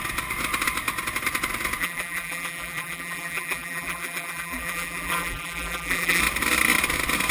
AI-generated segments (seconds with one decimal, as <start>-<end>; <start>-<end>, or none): 1.8-6.2